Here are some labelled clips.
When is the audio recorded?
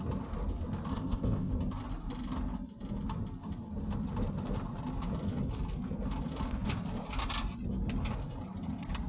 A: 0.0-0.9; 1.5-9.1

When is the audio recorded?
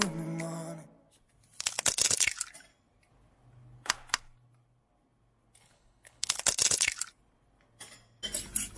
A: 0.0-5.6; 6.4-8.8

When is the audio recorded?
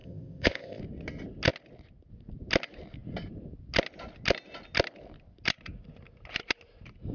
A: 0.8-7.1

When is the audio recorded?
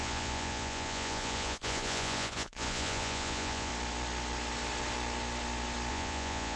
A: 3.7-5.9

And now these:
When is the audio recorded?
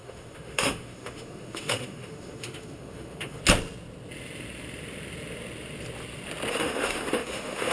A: 3.4-6.5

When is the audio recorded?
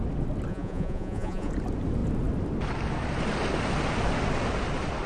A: 0.0-0.5; 1.5-5.1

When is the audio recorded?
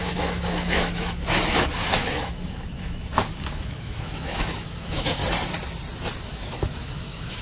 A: 5.2-6.2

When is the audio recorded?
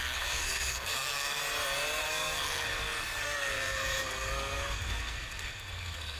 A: 1.4-2.0